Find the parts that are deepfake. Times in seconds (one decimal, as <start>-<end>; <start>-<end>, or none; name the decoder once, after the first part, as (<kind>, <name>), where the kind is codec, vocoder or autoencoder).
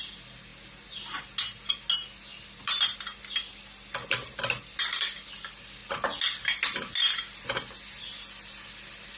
2.3-5.1 (vocoder, BigVGAN v2)